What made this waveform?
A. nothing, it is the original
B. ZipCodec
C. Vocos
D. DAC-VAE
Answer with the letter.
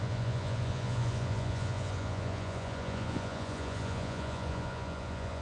C